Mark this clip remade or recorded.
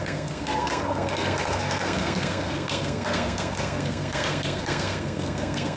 remade